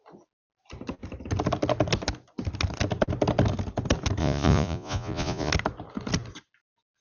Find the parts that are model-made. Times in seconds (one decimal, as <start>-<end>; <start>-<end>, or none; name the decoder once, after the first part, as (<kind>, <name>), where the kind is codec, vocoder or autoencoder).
4.2-5.5 (vocoder, Vocos)